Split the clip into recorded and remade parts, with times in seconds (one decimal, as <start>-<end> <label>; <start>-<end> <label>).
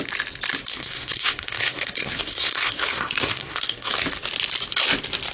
0.0-0.7 recorded; 0.7-3.9 remade; 3.9-5.3 recorded